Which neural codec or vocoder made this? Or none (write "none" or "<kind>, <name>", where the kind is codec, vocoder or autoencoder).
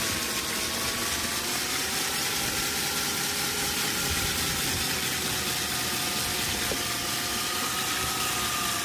none